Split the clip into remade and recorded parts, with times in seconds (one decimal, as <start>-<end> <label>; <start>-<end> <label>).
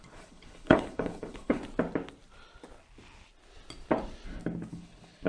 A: 0.0-1.6 remade; 1.6-4.7 recorded; 4.7-5.3 remade